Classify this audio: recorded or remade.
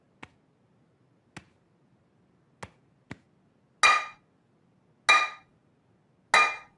recorded